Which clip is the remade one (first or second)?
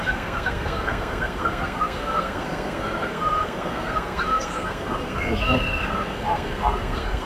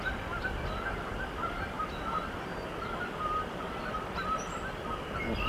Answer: first